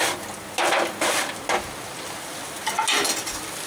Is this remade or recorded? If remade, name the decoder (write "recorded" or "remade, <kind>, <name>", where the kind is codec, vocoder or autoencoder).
recorded